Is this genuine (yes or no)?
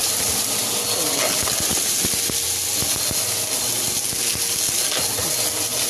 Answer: yes